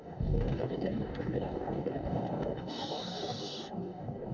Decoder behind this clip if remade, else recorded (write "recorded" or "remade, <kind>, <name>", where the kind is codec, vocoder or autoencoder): remade, codec, DAC